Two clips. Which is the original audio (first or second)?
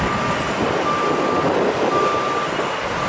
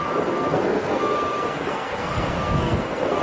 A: first